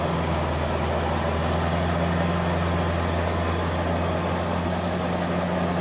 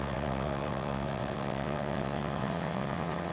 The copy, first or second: second